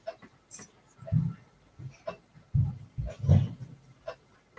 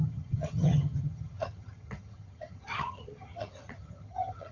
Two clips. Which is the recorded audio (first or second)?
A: first